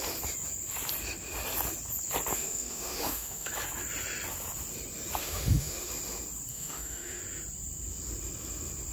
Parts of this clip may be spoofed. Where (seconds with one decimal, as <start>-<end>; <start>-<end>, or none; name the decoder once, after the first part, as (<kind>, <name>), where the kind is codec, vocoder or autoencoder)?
2.3-3.5 (autoencoder, DAC-VAE); 5.2-5.9; 6.5-7.2